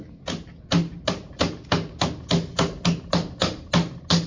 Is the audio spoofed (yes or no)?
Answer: no